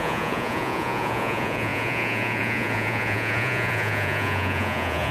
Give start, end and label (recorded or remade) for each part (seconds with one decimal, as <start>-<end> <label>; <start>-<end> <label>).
0.0-5.1 remade